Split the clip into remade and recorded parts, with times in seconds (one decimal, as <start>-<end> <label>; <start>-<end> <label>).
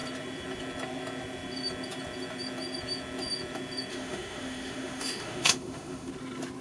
0.0-3.9 recorded; 3.9-6.1 remade; 6.1-6.6 recorded